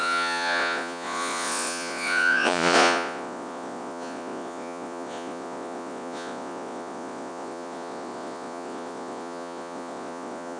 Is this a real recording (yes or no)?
no